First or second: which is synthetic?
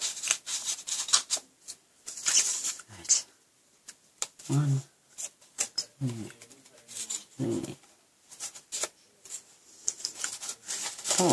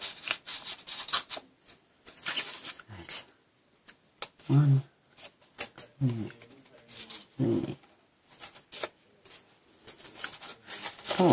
first